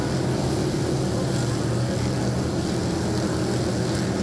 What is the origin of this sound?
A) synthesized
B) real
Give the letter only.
B